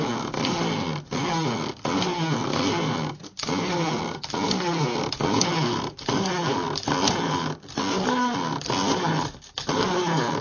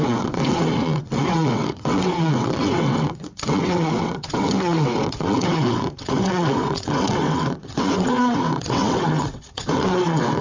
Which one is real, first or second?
first